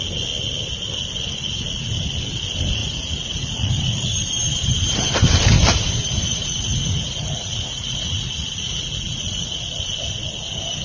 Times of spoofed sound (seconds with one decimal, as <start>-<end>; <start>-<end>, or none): 2.8-3.7; 6.3-9.6